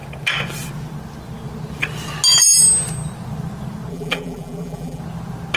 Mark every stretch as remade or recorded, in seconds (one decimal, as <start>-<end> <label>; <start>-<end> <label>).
0.0-3.9 recorded; 3.9-5.0 remade; 5.0-5.6 recorded